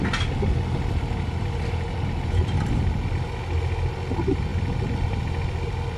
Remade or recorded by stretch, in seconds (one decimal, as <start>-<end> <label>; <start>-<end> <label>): 0.0-6.0 recorded